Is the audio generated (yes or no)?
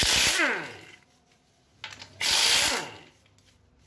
no